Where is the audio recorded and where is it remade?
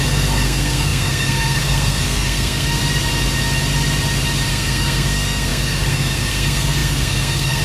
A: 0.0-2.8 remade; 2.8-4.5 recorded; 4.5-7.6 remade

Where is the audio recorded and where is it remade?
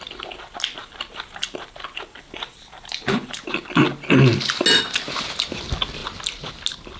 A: 0.0-0.8 recorded; 0.8-3.4 remade; 3.4-7.0 recorded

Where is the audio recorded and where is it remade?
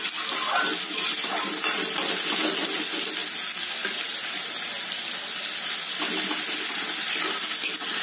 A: 0.0-8.0 recorded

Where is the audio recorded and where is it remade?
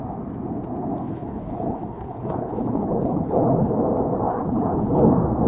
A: 0.0-1.0 recorded; 1.0-3.7 remade; 3.7-4.3 recorded; 4.3-5.1 remade; 5.1-5.5 recorded